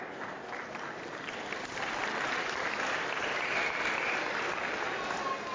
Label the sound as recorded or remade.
recorded